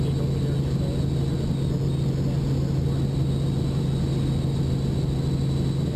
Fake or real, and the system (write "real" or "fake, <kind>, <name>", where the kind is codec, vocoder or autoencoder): real